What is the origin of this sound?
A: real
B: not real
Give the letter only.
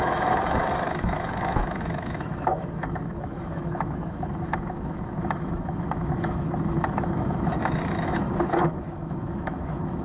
B